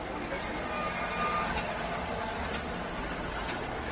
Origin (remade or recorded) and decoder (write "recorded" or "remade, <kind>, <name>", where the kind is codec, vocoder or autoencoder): recorded